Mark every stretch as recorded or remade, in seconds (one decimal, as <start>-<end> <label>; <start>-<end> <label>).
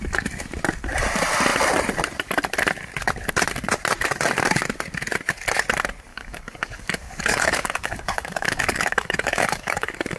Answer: 0.0-6.1 recorded; 6.1-10.2 remade